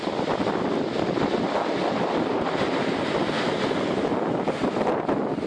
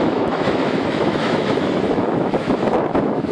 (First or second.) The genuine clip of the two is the first